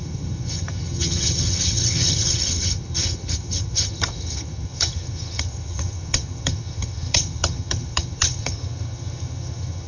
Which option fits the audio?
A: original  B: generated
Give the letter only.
B